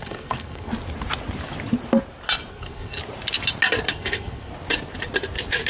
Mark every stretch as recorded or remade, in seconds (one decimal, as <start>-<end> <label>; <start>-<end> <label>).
0.0-0.7 remade; 0.7-2.5 recorded; 2.5-3.0 remade; 3.0-3.9 recorded; 3.9-4.5 remade; 4.5-5.7 recorded